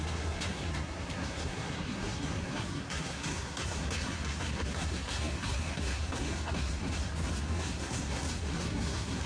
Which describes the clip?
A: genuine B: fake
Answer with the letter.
B